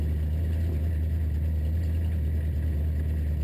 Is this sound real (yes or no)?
yes